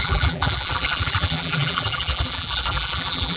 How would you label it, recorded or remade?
remade